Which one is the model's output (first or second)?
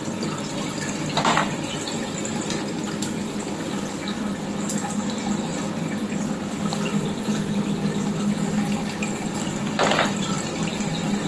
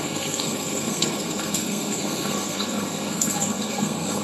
second